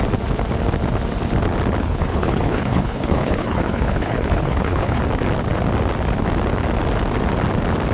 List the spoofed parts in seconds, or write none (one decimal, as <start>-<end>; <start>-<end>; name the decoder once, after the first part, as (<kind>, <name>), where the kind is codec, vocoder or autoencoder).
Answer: 1.8-5.0 (codec, HILCodec)